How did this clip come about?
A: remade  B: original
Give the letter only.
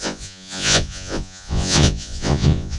A